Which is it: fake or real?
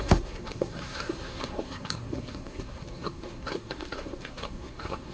fake